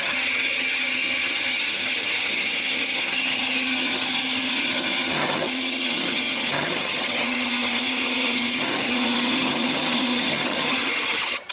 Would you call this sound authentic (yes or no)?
no